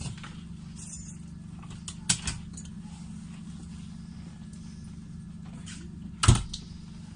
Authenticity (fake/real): real